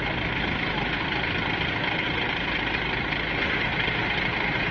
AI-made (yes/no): no